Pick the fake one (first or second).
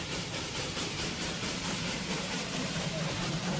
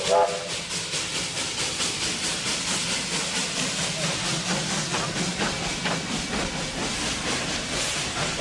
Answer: first